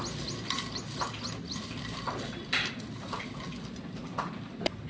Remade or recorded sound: recorded